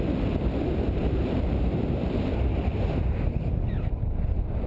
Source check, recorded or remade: remade